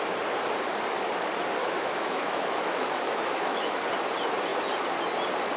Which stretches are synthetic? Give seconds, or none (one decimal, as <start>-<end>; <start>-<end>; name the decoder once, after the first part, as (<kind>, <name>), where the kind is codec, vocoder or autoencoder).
1.6-3.8 (autoencoder, DAC-VAE)